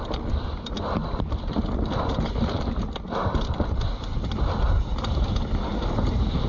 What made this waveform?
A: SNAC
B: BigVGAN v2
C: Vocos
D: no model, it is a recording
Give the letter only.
D